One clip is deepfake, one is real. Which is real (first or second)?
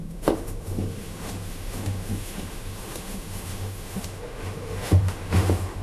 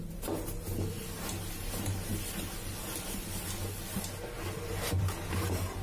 second